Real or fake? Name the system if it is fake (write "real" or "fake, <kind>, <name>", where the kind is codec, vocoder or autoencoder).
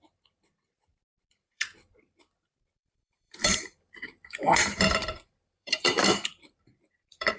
fake, vocoder, BigVGAN v2